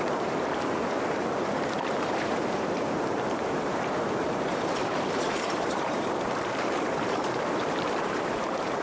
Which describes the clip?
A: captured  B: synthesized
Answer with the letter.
B